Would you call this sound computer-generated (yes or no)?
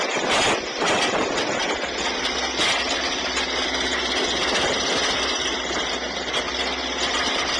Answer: no